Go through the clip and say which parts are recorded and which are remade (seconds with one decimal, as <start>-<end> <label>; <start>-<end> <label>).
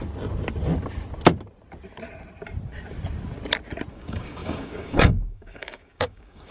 0.0-3.9 recorded; 3.9-6.5 remade